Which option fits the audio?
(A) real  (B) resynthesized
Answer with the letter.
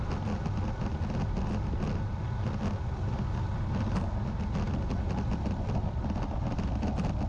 A